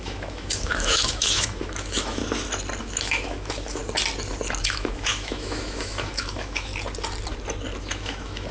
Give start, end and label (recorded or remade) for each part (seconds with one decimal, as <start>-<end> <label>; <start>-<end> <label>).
0.0-2.2 remade; 2.2-2.8 recorded; 2.8-3.8 remade; 3.8-4.6 recorded; 4.6-6.7 remade; 6.7-7.8 recorded; 7.8-8.5 remade